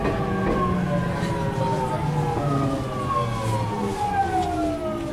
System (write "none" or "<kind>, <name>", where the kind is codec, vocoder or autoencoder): none